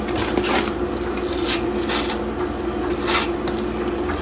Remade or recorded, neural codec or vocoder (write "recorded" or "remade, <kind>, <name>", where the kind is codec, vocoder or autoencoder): recorded